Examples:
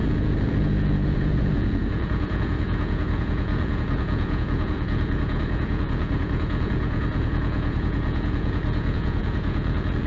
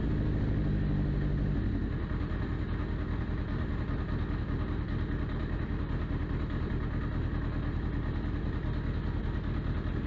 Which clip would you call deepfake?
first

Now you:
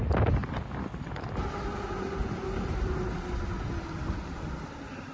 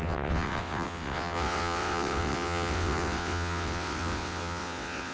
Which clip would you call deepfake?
second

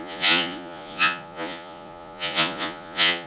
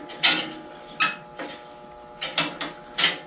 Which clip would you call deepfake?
first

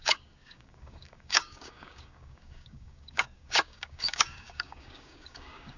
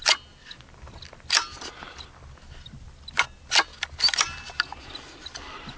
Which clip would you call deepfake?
first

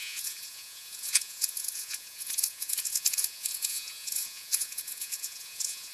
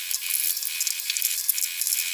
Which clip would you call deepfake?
first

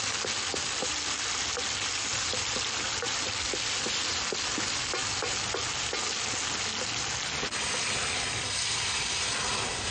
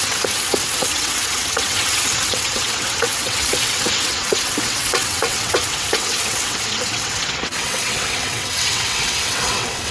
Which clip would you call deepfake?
second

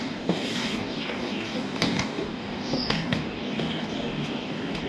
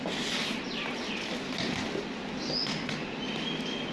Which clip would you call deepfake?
first